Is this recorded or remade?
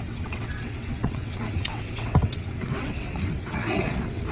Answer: remade